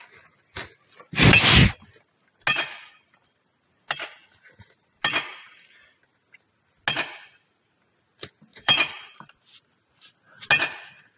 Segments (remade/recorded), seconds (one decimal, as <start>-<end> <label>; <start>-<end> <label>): 0.0-8.5 recorded; 8.5-9.2 remade; 9.2-11.2 recorded